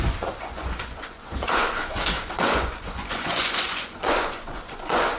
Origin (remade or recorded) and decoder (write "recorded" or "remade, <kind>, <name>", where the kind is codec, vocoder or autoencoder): remade, vocoder, Vocos